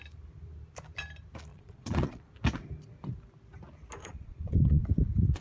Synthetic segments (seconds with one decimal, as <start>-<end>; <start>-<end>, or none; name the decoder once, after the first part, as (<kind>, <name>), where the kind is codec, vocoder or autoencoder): 1.5-2.2 (vocoder, Vocos); 4.0-4.8